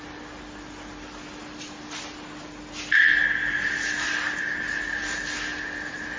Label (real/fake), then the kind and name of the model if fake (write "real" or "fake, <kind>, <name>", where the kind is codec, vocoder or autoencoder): real